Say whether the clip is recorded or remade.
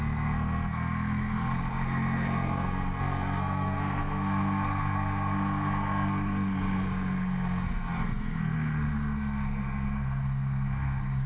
remade